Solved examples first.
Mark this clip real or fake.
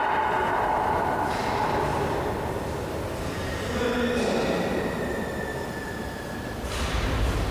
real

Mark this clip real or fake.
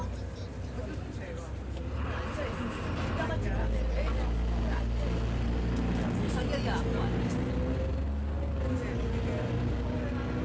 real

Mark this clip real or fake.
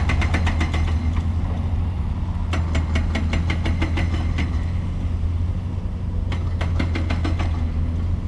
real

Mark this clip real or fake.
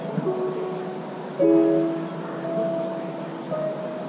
real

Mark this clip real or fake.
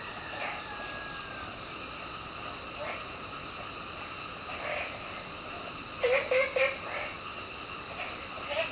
real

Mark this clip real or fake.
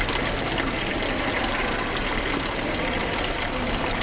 real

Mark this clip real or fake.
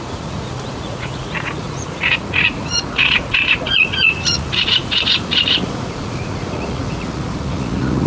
fake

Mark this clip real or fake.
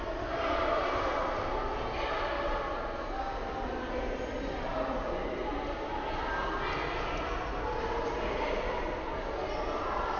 real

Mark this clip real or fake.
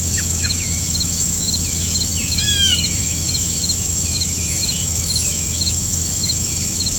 fake